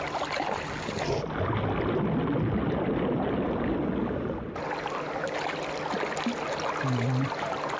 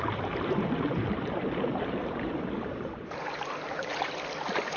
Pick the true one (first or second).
first